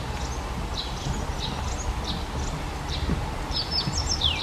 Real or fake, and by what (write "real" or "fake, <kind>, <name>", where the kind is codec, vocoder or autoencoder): real